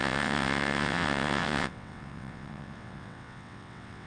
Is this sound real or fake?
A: fake